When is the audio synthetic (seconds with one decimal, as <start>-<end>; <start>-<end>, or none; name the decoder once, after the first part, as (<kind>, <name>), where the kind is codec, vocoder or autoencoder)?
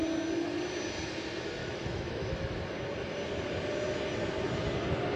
1.6-2.6 (autoencoder, DAC-VAE)